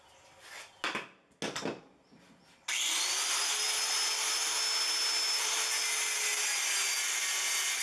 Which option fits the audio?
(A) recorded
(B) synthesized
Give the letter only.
A